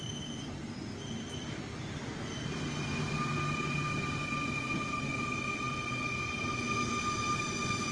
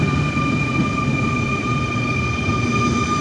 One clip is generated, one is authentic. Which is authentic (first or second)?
first